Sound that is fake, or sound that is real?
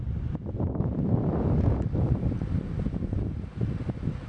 real